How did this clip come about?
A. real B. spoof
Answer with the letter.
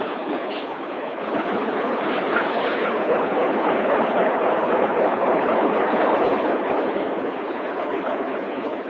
B